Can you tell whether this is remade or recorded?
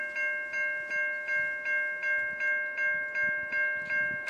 recorded